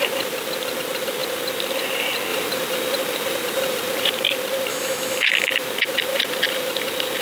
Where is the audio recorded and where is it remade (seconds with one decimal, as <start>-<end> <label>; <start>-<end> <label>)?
0.0-4.7 recorded; 4.7-5.5 remade; 5.5-7.2 recorded

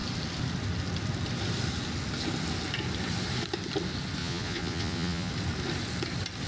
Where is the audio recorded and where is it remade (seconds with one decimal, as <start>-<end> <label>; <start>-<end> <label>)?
0.0-4.2 recorded; 4.2-5.3 remade; 5.3-6.5 recorded

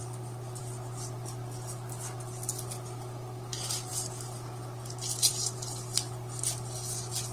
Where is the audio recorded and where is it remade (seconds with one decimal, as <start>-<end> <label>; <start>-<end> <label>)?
0.0-7.3 recorded

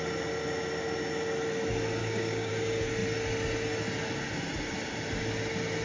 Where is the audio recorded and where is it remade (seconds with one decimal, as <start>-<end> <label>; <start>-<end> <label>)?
0.0-2.0 recorded; 2.0-2.5 remade; 2.5-5.8 recorded

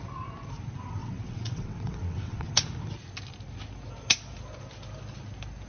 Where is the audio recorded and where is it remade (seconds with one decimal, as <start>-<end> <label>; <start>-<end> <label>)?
0.0-1.0 recorded; 1.0-2.5 remade; 2.5-5.7 recorded